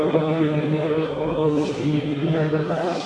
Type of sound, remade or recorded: remade